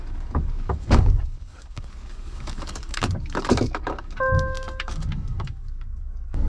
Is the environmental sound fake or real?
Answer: fake